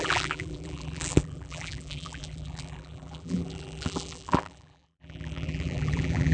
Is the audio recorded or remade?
remade